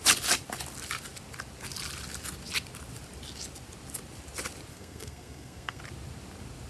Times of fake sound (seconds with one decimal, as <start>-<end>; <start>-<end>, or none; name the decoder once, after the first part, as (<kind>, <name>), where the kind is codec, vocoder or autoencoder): 4.7-5.8 (codec, SNAC)